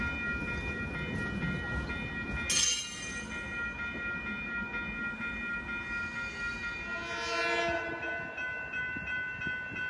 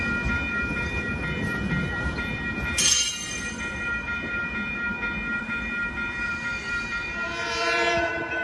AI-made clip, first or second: second